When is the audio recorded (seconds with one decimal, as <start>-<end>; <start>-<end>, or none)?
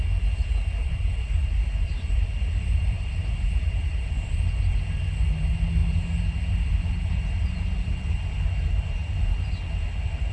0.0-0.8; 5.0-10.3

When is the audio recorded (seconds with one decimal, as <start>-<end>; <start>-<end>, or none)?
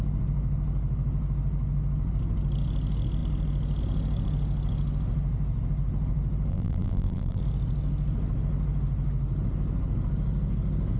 0.0-6.5; 7.4-11.0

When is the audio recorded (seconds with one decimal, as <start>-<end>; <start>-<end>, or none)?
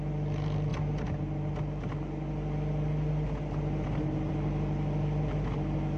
0.0-6.0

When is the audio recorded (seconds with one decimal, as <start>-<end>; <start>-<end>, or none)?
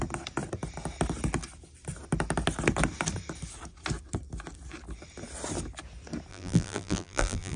0.0-6.3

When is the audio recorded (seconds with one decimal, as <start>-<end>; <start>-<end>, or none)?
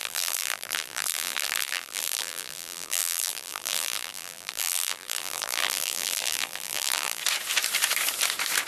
7.2-8.7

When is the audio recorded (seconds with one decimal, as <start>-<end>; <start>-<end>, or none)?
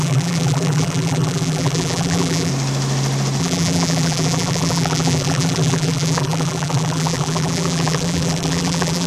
2.5-3.4